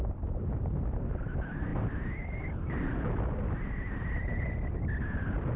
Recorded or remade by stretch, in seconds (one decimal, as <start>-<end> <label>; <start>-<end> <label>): 0.0-5.6 recorded